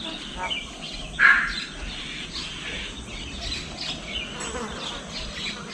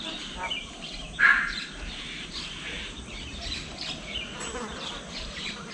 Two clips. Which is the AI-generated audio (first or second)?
second